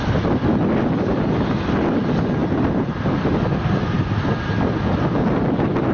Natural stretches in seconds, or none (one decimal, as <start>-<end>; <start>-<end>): 0.0-5.9